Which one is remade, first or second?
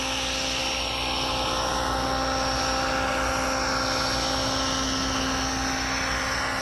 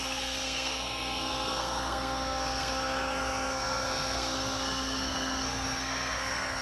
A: second